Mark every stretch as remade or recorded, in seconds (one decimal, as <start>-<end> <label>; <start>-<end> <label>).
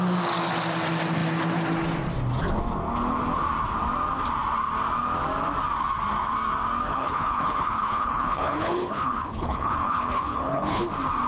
0.0-6.9 recorded; 6.9-10.9 remade; 10.9-11.3 recorded